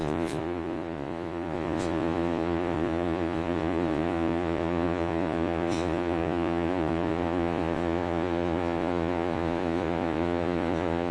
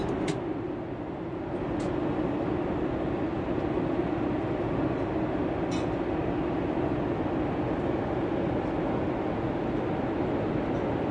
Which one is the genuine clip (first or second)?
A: second